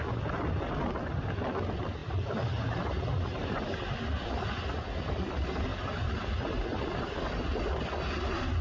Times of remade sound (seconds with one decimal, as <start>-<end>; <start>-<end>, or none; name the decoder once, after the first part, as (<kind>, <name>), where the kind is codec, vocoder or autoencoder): none